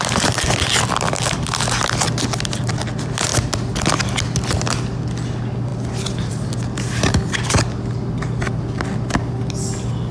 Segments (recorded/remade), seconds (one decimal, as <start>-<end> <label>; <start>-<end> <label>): 0.0-10.1 recorded